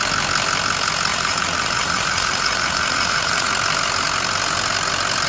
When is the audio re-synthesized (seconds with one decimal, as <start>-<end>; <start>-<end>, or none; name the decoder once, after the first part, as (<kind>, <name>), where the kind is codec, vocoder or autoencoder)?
1.1-3.5 (vocoder, Vocos)